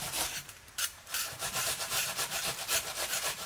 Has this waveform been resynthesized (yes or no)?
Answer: yes